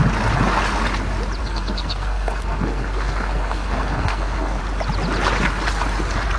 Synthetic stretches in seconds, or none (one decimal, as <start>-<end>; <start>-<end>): 1.4-4.6